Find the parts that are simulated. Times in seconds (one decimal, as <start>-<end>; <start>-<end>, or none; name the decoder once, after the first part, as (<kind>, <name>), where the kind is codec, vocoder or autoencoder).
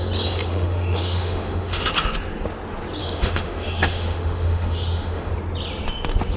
0.5-1.9 (autoencoder, DAC-VAE); 3.0-5.3